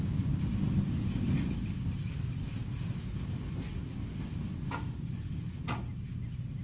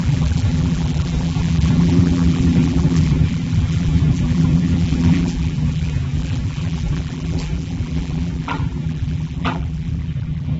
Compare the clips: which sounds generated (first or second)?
second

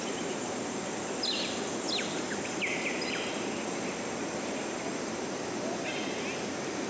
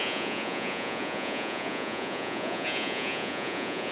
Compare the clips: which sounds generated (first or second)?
second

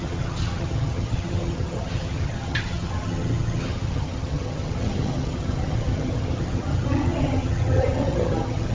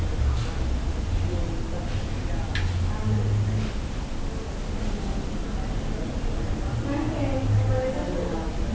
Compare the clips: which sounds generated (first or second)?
first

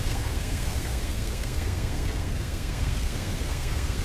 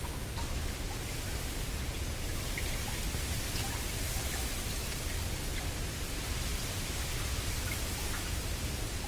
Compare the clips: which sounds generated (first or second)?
first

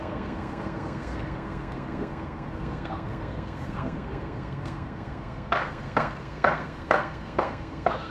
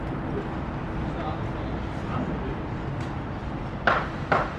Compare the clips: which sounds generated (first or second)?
first